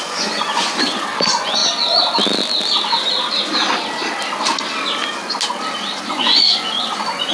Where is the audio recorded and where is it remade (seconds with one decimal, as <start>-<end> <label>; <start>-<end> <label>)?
0.0-1.6 remade; 1.6-6.0 recorded; 6.0-7.3 remade